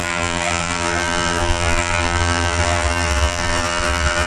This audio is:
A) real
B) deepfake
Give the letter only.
B